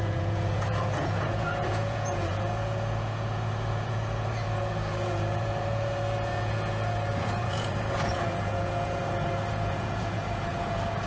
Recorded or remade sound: remade